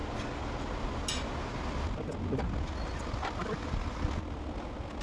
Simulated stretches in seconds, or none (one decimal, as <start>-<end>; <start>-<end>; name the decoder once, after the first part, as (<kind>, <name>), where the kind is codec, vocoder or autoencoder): none